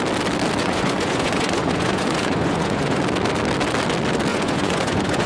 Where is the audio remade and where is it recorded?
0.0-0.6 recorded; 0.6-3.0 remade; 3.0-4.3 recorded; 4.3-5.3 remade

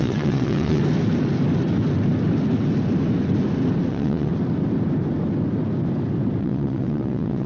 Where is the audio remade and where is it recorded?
0.0-0.8 remade; 0.8-3.9 recorded; 3.9-4.3 remade; 4.3-6.4 recorded; 6.4-7.5 remade

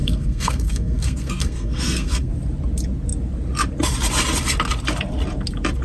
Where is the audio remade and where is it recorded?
0.0-2.3 remade; 2.3-5.8 recorded

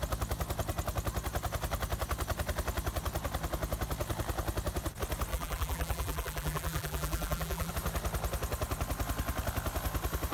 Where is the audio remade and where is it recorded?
0.0-5.3 recorded; 5.3-7.7 remade; 7.7-10.3 recorded